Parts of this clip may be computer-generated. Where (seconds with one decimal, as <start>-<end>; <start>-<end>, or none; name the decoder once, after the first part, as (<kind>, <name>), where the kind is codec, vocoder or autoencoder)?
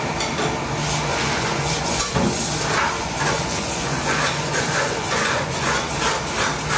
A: 1.1-2.6 (vocoder, Vocos); 3.0-6.0